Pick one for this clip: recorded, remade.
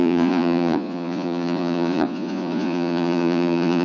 remade